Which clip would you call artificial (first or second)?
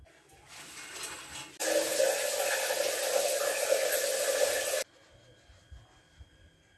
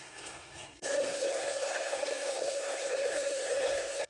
second